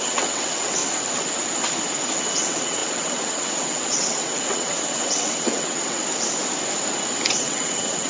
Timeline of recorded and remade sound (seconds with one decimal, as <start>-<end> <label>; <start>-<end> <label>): 0.0-0.8 remade; 0.8-2.4 recorded; 2.4-6.0 remade; 6.0-7.3 recorded; 7.3-8.1 remade